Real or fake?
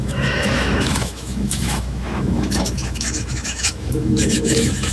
fake